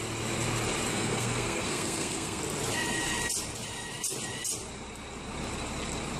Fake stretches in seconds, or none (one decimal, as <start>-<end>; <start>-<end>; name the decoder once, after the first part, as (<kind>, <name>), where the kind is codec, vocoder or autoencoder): 0.9-2.4 (codec, SNAC)